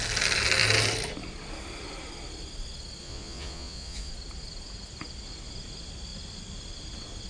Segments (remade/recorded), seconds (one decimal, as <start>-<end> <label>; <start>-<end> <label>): 0.0-3.0 recorded; 3.0-4.1 remade; 4.1-7.3 recorded

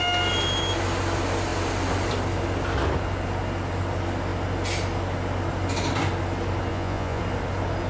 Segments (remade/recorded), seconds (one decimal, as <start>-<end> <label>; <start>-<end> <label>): 0.0-6.7 recorded; 6.7-7.2 remade; 7.2-7.9 recorded

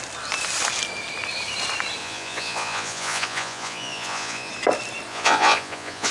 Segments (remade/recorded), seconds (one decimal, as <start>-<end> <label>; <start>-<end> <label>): 0.0-2.0 recorded; 2.0-4.5 remade; 4.5-5.1 recorded; 5.1-6.1 remade